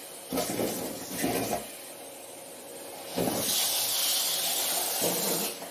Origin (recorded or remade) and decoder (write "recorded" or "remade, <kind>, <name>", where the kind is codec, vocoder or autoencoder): recorded